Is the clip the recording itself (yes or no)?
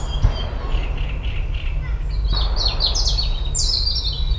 yes